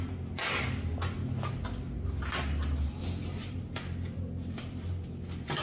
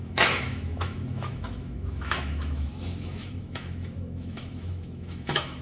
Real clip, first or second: first